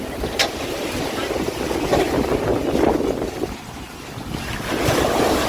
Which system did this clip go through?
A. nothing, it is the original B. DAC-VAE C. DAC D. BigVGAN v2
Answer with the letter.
A